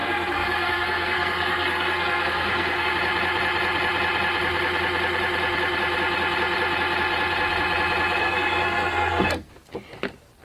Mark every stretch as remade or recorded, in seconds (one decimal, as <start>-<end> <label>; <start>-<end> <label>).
0.0-2.9 remade; 2.9-8.2 recorded; 8.2-9.5 remade; 9.5-10.4 recorded